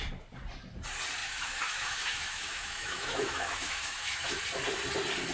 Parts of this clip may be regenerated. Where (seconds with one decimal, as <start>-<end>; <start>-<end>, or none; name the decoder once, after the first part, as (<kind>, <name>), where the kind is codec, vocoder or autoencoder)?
1.2-4.4 (autoencoder, DAC-VAE)